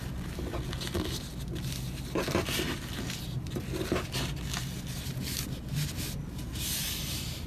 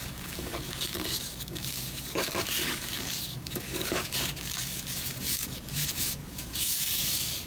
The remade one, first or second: second